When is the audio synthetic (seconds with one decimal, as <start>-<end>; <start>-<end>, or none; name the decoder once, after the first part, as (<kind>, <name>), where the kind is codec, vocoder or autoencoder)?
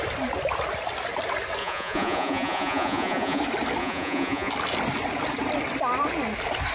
1.6-3.4 (vocoder, Vocos); 3.8-4.5